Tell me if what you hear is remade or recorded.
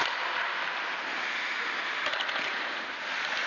recorded